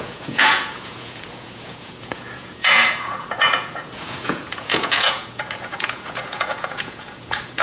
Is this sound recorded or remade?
remade